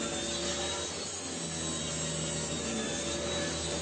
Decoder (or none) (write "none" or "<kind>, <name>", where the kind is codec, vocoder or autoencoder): none